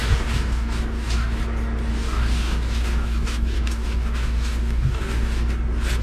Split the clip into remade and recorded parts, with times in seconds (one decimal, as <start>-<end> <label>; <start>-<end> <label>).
0.0-1.4 remade; 1.4-1.9 recorded; 1.9-5.5 remade; 5.5-6.0 recorded